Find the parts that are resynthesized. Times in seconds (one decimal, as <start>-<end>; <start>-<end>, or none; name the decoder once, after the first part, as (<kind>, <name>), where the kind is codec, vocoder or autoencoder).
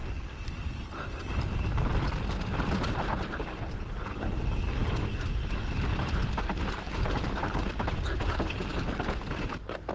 0.0-2.7 (vocoder, BigVGAN v2)